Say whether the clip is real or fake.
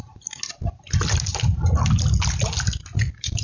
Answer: real